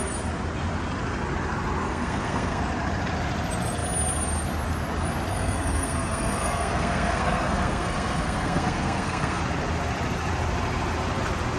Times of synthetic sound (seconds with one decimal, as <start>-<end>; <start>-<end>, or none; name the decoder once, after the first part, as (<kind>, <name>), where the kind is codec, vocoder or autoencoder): 1.8-2.6 (codec, SNAC); 5.3-9.4